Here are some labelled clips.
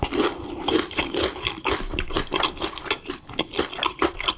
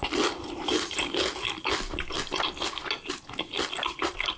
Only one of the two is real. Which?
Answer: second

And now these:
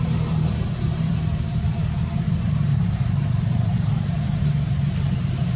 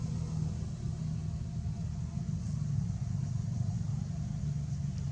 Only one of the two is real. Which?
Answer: second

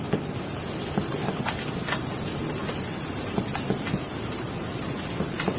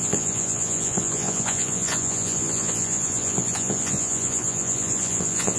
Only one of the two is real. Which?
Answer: first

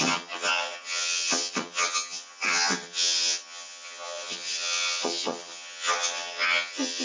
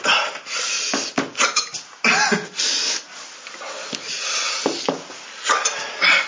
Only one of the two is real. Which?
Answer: second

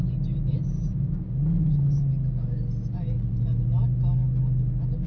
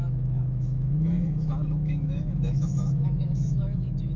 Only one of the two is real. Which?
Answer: first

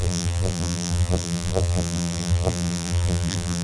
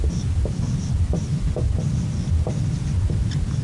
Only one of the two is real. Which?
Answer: second